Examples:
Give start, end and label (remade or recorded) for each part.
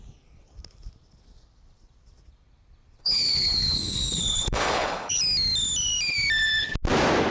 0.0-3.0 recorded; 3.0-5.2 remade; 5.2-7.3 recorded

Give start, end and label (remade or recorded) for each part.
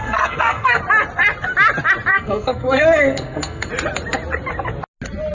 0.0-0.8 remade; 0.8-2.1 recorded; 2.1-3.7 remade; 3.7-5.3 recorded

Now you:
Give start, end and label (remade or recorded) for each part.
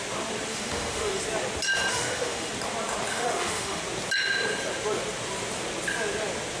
0.0-0.5 recorded; 0.5-1.2 remade; 1.2-1.9 recorded; 1.9-2.5 remade; 2.5-3.1 recorded; 3.1-3.8 remade; 3.8-6.6 recorded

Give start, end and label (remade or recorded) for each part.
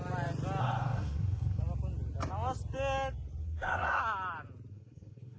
0.0-0.6 recorded; 0.6-1.6 remade; 1.6-3.4 recorded; 3.4-4.0 remade; 4.0-4.7 recorded; 4.7-5.4 remade